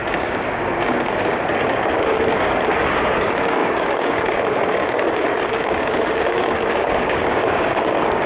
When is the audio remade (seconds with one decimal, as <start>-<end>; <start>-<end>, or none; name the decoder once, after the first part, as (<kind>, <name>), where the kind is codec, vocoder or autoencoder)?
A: 0.0-8.3 (codec, DAC)